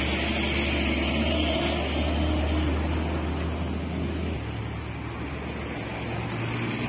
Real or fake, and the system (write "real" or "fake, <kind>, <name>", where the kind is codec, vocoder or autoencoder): real